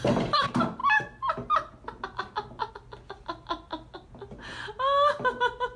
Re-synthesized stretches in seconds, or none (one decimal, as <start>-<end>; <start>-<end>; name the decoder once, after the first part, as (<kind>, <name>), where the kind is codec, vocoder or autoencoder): none